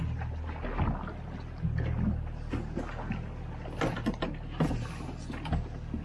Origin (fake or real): real